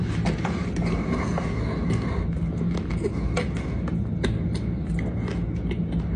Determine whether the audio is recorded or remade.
recorded